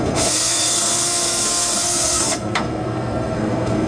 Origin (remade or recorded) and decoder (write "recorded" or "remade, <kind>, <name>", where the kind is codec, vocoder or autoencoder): remade, codec, SNAC